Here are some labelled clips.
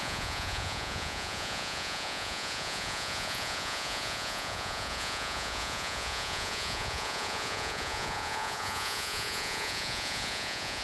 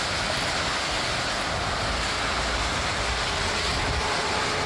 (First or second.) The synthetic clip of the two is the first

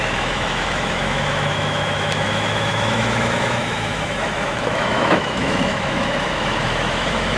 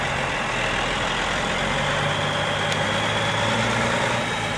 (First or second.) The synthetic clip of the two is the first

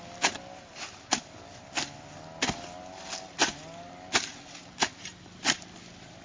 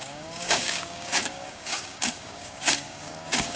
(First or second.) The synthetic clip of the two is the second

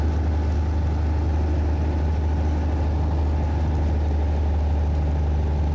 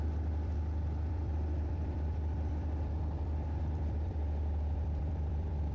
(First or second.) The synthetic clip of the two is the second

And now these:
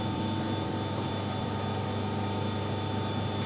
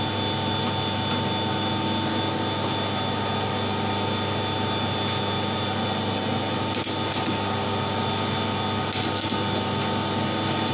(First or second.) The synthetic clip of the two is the first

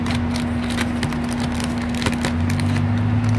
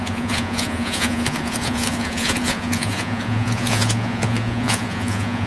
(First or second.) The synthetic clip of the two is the second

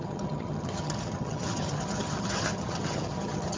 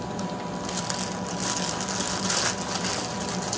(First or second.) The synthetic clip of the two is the first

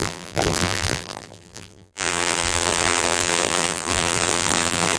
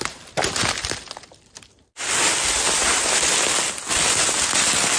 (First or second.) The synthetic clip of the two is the first